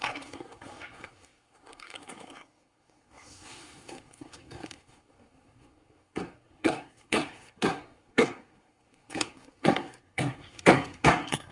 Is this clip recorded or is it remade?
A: remade